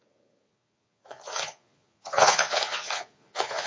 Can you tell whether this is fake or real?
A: fake